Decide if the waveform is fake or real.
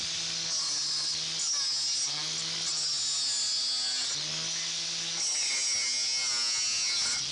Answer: real